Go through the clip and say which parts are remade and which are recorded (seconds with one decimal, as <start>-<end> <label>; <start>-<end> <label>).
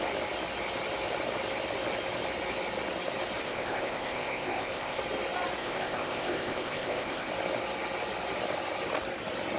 0.0-3.4 recorded; 3.4-5.0 remade; 5.0-5.6 recorded; 5.6-7.3 remade; 7.3-9.6 recorded